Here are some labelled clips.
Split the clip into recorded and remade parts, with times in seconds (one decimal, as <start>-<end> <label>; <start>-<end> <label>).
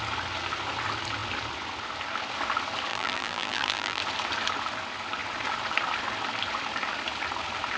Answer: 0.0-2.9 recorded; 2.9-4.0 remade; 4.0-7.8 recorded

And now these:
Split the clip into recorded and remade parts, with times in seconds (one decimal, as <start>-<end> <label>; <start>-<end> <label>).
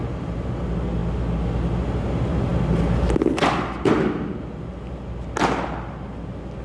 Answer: 0.0-6.6 recorded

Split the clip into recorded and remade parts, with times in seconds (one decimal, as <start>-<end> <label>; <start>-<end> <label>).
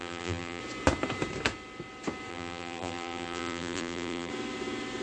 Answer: 0.0-0.6 remade; 0.6-2.3 recorded; 2.3-4.3 remade; 4.3-5.0 recorded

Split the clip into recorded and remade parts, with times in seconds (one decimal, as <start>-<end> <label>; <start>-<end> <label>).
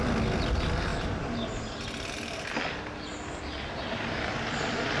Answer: 0.0-5.0 recorded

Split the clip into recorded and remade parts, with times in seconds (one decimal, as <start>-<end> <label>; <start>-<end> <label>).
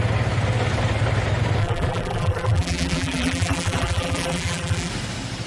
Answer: 0.0-1.6 recorded; 1.6-4.9 remade; 4.9-5.5 recorded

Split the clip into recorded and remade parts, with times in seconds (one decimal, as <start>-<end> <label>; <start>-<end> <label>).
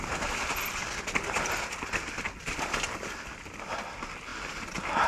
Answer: 0.0-5.1 recorded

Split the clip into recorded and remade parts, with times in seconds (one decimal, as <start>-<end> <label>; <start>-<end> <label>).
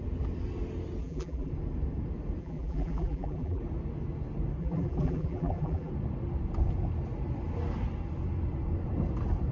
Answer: 0.0-1.0 recorded; 1.0-1.5 remade; 1.5-2.4 recorded; 2.4-3.6 remade; 3.6-4.6 recorded; 4.6-5.9 remade; 5.9-9.5 recorded